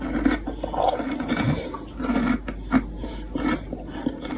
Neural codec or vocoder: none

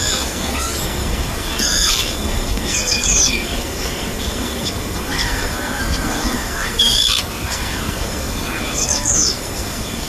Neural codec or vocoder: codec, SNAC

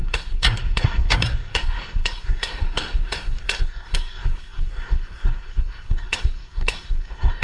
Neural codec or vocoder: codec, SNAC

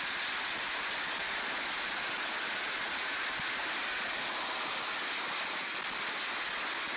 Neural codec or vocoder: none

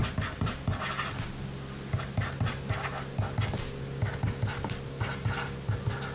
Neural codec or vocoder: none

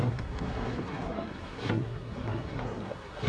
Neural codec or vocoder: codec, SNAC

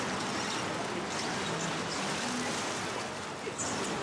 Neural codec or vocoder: none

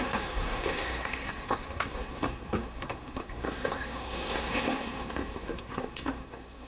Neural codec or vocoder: codec, SNAC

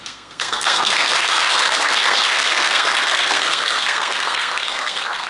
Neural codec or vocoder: codec, SNAC